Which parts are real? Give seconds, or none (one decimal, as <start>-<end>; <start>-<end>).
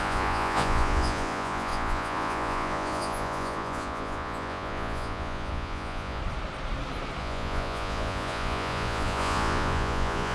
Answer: 6.2-7.2